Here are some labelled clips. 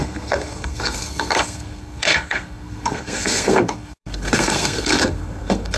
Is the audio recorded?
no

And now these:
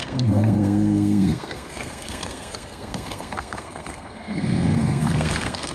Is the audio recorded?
no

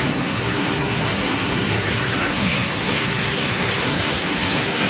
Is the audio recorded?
no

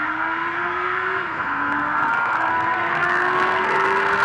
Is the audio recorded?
no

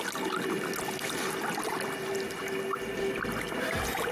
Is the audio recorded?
yes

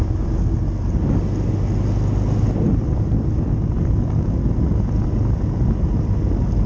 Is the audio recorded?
yes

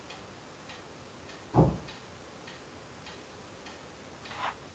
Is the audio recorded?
yes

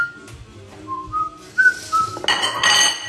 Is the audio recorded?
yes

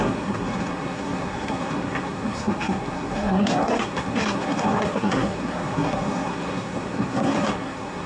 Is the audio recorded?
no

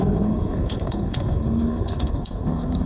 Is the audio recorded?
no